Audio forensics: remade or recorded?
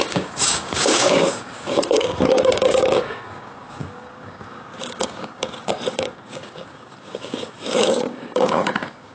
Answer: remade